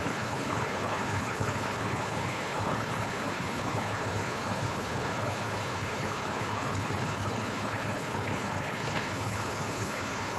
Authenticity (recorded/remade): remade